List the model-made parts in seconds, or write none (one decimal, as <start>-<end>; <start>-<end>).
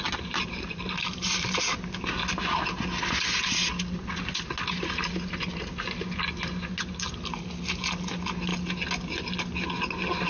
none